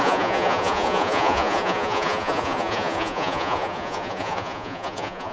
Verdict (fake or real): fake